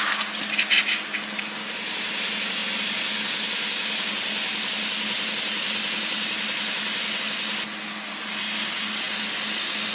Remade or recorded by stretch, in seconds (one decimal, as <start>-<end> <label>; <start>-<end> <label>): 0.0-9.9 recorded